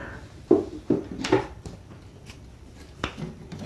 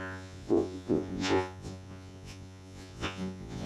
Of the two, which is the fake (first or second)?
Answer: second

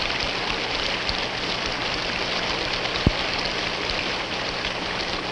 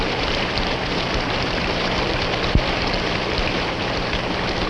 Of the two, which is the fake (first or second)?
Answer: second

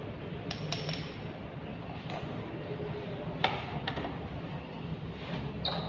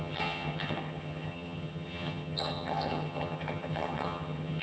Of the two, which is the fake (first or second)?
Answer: second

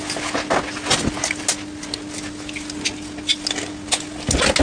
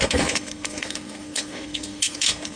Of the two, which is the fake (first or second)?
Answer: second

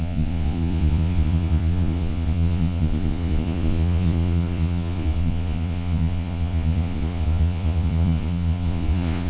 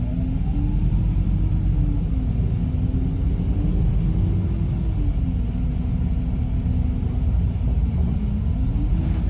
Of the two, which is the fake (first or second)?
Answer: first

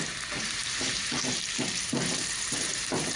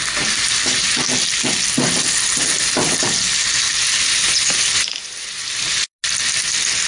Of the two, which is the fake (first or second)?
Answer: first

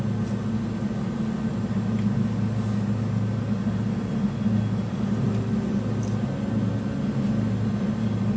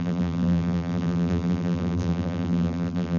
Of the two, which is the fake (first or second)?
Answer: second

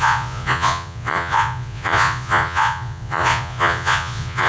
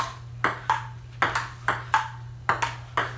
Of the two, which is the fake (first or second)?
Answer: first